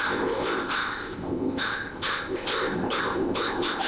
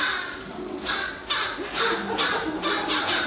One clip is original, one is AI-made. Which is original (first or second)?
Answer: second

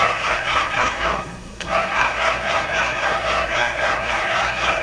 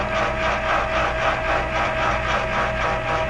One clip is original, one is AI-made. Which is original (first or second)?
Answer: second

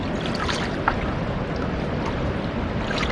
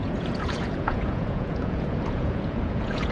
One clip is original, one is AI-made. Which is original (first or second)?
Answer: first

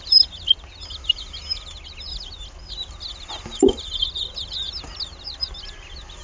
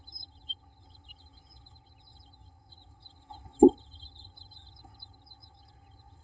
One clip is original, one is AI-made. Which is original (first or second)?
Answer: first